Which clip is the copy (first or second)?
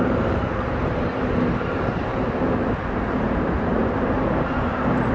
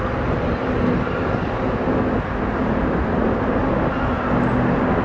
first